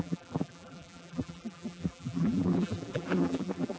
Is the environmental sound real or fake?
fake